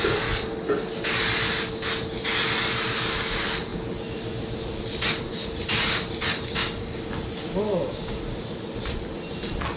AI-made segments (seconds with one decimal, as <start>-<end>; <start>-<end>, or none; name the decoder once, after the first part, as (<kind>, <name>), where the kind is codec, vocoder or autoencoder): 6.6-7.1 (codec, DAC); 7.7-8.2